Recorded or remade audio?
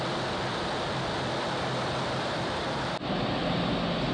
recorded